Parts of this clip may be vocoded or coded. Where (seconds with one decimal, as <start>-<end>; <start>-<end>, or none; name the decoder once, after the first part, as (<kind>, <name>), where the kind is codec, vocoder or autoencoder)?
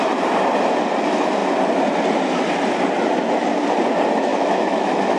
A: 4.3-5.2 (autoencoder, DAC-VAE)